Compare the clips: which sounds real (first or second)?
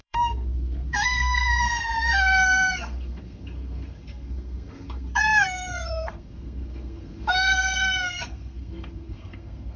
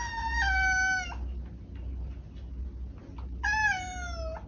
second